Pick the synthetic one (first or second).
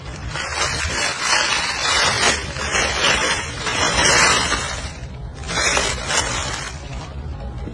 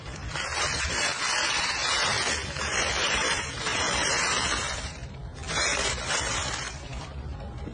second